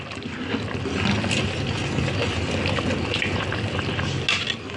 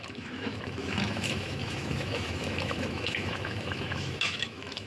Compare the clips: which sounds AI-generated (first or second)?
second